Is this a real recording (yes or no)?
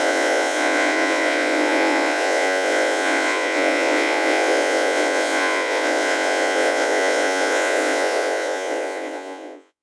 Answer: no